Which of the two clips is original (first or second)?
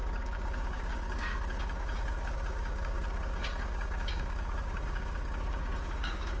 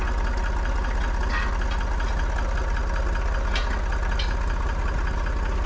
second